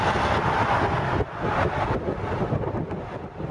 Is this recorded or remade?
recorded